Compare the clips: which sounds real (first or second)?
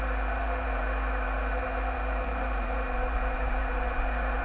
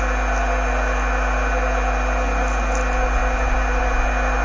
second